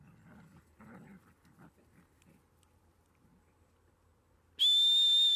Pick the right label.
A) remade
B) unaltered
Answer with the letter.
B